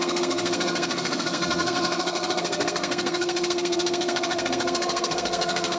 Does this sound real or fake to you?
fake